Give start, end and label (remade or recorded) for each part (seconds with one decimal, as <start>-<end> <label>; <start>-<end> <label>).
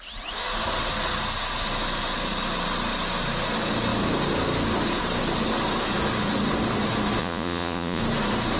0.0-7.2 recorded; 7.2-8.0 remade; 8.0-8.6 recorded